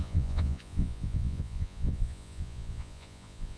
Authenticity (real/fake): fake